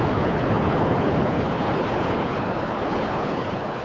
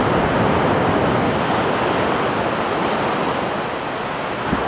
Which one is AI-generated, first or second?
first